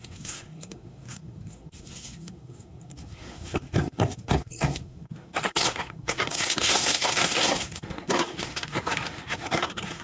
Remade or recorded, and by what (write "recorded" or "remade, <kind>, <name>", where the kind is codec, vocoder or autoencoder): remade, codec, SNAC